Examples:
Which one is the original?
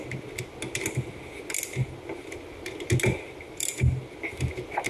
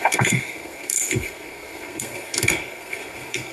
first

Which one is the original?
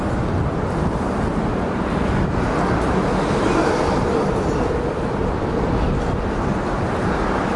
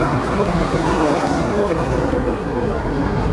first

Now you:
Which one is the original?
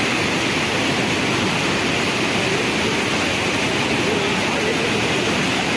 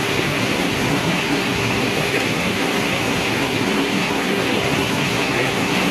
first